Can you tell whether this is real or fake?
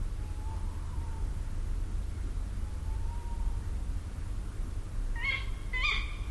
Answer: real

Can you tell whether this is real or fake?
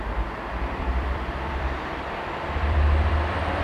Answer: fake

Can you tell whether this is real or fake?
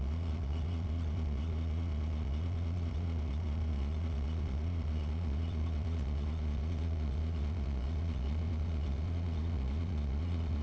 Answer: fake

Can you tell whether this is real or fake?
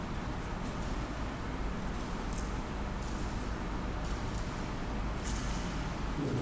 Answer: real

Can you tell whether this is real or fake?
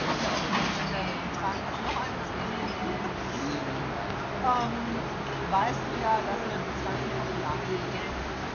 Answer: real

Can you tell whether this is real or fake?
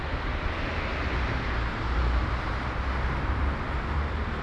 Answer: real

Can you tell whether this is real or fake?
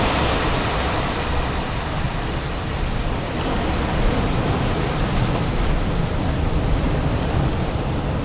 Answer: real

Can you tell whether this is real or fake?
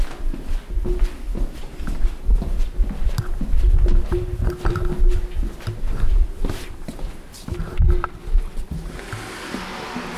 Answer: real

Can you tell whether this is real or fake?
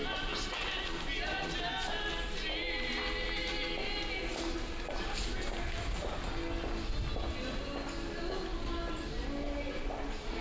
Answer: real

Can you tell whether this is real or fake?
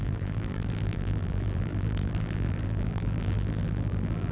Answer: fake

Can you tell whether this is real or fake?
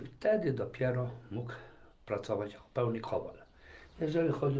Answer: real